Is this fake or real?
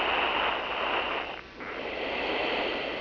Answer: real